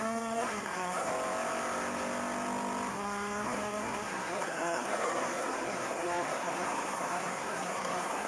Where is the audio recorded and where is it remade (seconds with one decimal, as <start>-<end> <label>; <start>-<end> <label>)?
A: 0.0-1.1 remade; 1.1-2.9 recorded; 2.9-8.3 remade